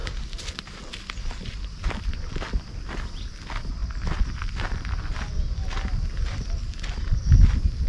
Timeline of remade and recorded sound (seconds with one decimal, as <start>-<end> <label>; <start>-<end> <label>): 0.0-7.9 recorded